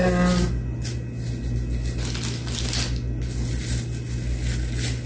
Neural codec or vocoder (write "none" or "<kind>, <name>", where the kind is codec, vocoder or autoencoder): none